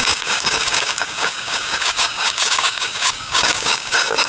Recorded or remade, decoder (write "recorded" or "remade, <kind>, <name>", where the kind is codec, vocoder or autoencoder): remade, codec, DAC